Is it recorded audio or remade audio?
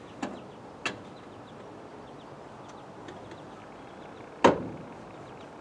recorded